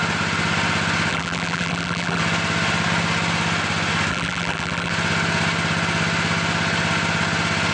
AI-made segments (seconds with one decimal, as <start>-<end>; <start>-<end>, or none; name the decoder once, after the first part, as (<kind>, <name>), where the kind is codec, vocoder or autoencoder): 1.1-2.2 (vocoder, BigVGAN v2); 4.1-4.9